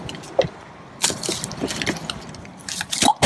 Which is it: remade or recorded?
recorded